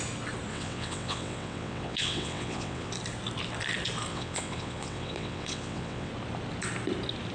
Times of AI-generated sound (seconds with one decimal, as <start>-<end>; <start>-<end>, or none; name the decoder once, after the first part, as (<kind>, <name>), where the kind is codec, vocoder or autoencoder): 0.5-2.9 (vocoder, WaveNeXt); 4.1-6.1